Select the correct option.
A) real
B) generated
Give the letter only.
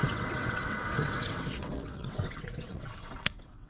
B